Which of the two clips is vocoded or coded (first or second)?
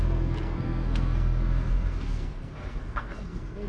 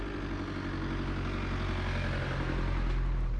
first